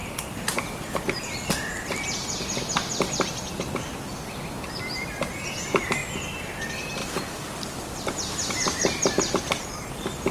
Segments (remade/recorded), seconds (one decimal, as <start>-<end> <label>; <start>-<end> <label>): 0.0-1.0 remade; 1.0-10.3 recorded